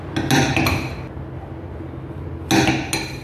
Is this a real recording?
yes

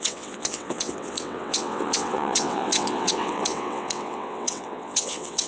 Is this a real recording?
no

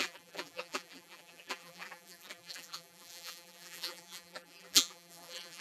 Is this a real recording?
no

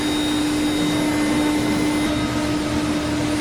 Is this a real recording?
yes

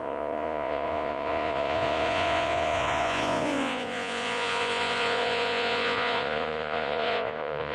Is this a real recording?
no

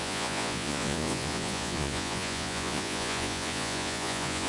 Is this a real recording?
no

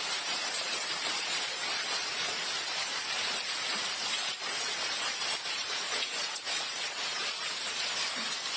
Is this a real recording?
no